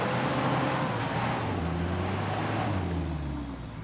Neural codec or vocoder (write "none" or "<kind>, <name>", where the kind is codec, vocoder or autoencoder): none